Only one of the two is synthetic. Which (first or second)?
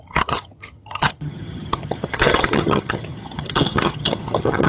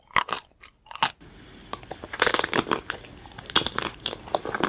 first